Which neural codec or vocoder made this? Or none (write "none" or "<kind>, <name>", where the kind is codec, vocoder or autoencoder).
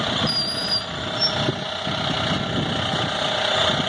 none